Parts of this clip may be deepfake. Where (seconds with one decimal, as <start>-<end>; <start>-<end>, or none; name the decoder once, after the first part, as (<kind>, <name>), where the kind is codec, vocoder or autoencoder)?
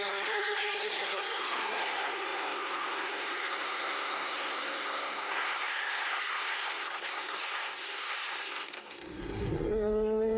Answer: 0.0-10.4 (codec, SNAC)